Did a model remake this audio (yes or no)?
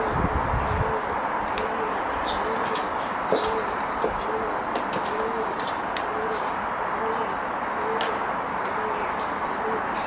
no